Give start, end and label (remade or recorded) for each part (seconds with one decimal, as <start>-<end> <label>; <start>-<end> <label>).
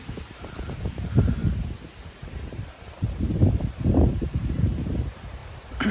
0.0-1.4 remade; 1.4-2.1 recorded; 2.1-5.9 remade